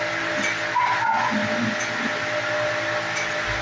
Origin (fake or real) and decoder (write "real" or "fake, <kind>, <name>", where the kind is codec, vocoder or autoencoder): real